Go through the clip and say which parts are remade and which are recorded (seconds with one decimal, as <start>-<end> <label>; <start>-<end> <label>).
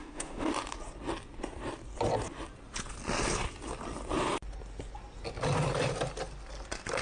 0.0-0.5 remade; 0.5-7.0 recorded